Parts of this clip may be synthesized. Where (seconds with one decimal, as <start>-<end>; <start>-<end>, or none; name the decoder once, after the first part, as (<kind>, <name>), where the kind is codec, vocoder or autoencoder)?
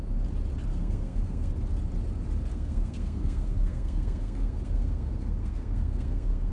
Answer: 0.7-1.5 (codec, SNAC); 2.5-6.5